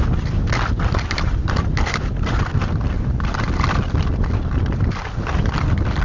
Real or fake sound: real